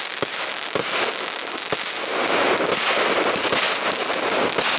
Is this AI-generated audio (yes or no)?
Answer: no